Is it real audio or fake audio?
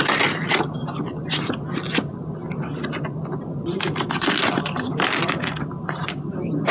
real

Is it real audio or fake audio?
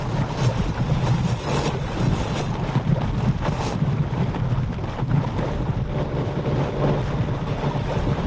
real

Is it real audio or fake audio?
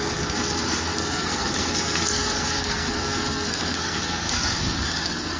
fake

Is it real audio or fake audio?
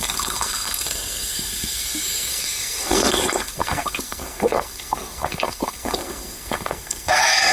fake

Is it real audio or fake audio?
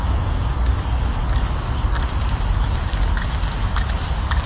real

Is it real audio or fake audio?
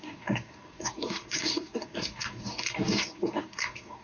fake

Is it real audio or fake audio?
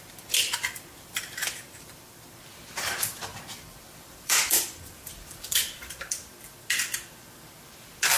fake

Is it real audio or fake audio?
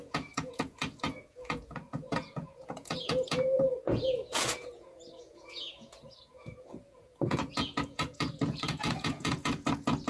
fake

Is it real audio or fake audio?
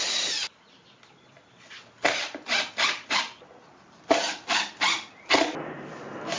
real